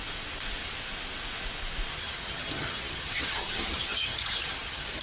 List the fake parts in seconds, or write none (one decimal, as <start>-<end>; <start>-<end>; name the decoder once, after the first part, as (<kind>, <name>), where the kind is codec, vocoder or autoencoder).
1.9-5.0 (vocoder, HiFi-GAN)